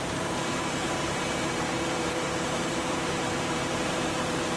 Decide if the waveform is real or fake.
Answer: fake